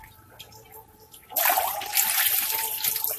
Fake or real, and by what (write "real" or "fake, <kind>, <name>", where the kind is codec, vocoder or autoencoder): fake, vocoder, BigVGAN v2